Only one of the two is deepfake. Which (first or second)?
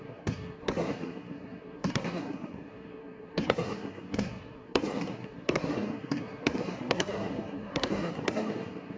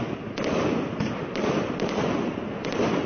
first